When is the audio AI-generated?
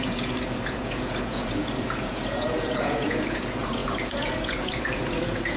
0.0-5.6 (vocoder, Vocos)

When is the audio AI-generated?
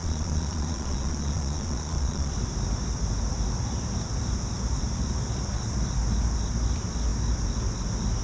0.0-2.3 (vocoder, Vocos)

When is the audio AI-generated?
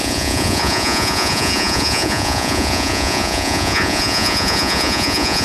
0.0-5.4 (vocoder, Vocos)